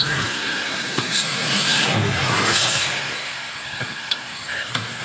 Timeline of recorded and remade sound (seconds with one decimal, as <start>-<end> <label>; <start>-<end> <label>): 0.0-5.0 remade